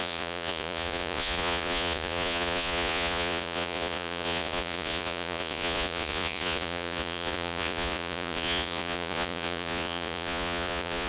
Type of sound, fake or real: fake